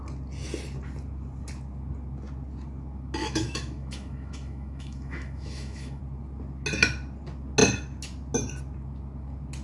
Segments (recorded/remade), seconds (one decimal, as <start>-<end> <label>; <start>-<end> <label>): 0.0-3.2 recorded; 3.2-6.0 remade; 6.0-9.6 recorded